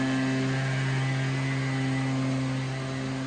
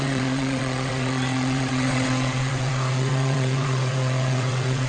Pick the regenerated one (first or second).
second